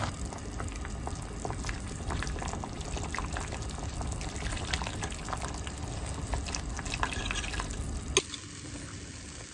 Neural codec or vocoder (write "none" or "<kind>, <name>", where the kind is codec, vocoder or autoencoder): none